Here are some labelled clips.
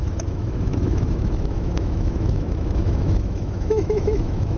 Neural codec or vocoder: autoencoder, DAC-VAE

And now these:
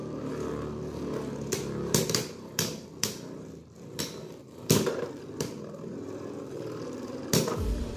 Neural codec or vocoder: vocoder, BigVGAN v2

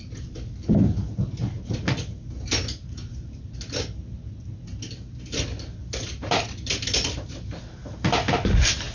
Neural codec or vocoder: none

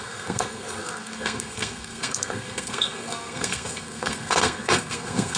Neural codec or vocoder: codec, SNAC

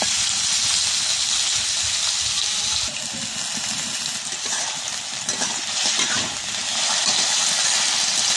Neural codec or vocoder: none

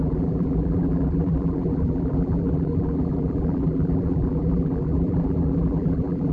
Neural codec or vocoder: vocoder, BigVGAN v2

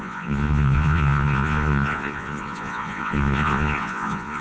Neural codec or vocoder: vocoder, Vocos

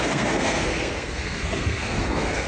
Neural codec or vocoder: codec, SNAC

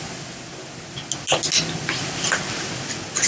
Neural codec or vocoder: none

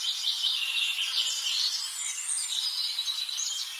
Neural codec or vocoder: none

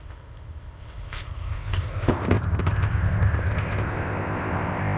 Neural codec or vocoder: codec, ZipCodec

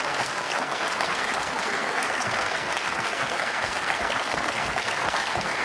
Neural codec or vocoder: codec, SNAC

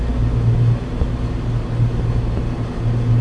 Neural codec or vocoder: none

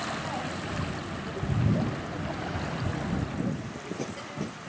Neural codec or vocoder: none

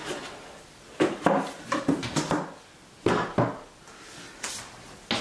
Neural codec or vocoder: none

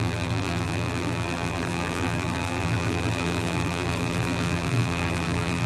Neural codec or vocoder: vocoder, BigVGAN v2